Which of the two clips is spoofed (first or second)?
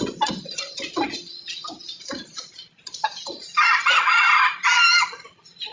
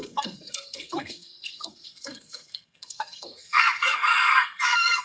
second